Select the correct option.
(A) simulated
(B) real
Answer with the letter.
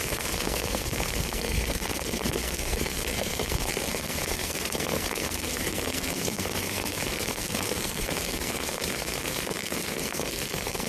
A